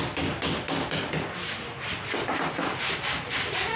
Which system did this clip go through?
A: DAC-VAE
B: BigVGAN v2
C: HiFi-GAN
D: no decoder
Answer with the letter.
D